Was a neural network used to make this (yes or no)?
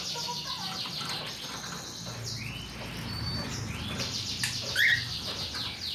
no